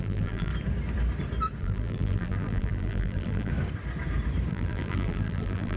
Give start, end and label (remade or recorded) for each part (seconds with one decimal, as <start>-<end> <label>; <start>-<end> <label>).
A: 0.0-0.5 remade; 0.5-1.6 recorded; 1.6-3.5 remade; 3.5-4.5 recorded; 4.5-5.8 remade